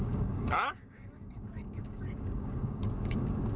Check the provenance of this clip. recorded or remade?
remade